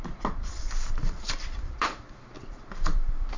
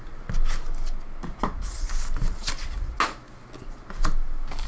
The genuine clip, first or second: second